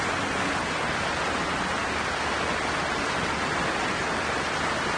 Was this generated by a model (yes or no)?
no